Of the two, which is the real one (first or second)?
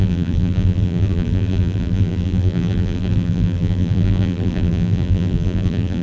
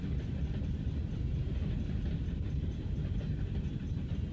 second